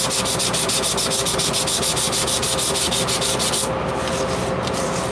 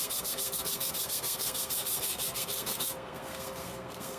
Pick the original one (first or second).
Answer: first